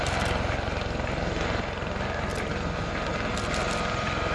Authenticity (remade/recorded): recorded